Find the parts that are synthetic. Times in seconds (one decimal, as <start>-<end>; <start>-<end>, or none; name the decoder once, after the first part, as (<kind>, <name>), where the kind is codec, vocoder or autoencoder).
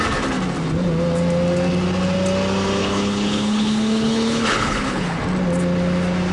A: 2.8-5.2 (codec, HILCodec)